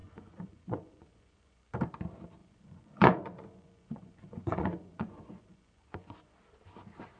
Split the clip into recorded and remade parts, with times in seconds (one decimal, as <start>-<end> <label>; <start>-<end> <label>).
0.0-1.7 remade; 1.7-2.4 recorded; 2.4-6.4 remade; 6.4-7.2 recorded